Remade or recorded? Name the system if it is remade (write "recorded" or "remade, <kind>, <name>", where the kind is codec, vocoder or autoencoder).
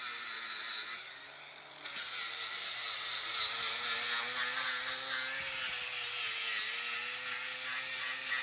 recorded